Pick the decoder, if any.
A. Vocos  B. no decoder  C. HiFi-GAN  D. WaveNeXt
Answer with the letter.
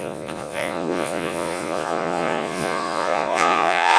A